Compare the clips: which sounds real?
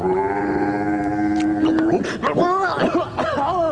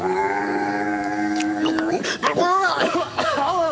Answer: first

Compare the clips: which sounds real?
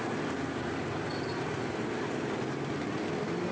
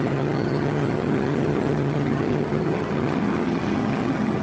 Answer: first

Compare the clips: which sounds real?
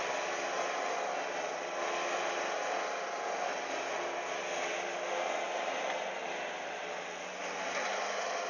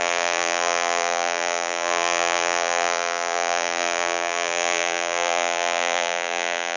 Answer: first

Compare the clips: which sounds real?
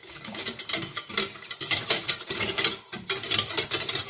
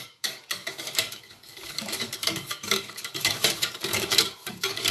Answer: first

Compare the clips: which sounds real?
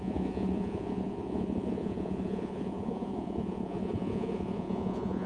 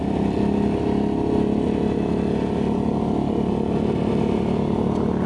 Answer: second